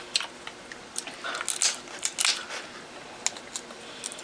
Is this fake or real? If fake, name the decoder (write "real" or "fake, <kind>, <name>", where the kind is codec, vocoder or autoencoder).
real